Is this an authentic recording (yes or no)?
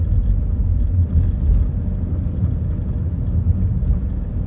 yes